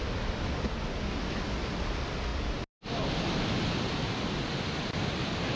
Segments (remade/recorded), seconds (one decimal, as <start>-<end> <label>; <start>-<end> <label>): 0.0-5.6 recorded